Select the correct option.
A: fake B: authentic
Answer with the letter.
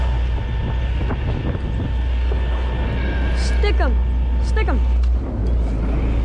B